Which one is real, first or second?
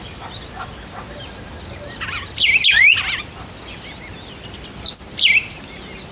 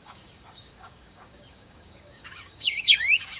first